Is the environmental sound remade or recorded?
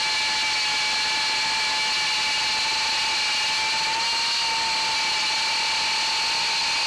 recorded